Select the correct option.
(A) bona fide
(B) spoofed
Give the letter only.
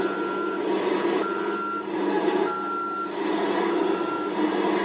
A